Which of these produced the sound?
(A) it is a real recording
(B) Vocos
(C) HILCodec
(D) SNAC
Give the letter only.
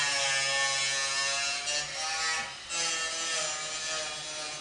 A